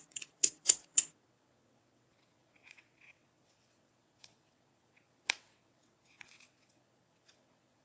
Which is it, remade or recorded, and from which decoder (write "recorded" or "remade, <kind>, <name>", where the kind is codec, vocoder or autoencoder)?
remade, vocoder, WaveNeXt